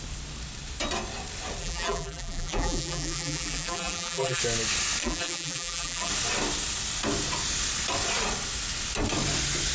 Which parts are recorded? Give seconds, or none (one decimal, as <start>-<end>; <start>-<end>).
0.0-1.6; 4.4-5.0; 6.1-9.7